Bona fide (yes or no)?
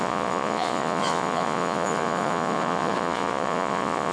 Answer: no